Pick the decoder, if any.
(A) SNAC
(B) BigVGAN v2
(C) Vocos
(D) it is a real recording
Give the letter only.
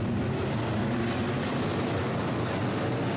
D